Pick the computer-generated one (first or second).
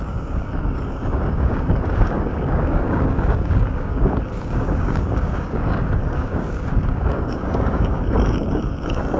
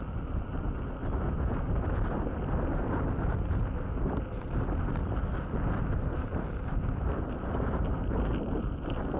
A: first